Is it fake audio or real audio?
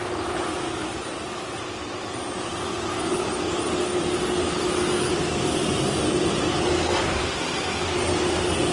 real